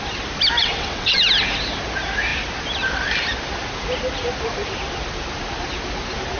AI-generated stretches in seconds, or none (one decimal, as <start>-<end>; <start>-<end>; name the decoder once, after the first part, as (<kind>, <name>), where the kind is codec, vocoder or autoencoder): 0.6-1.2 (vocoder, WaveNeXt)